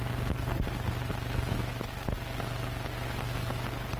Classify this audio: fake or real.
real